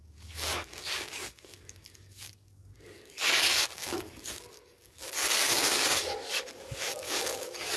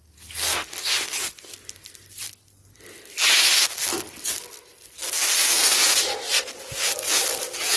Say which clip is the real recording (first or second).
second